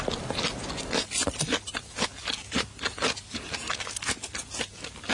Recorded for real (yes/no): yes